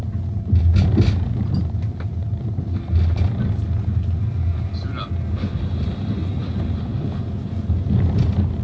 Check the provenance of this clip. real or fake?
real